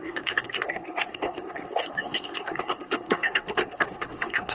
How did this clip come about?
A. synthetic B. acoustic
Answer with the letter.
A